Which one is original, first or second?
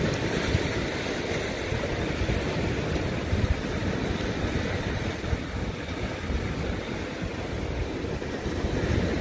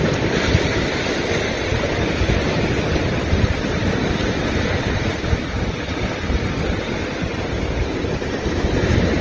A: first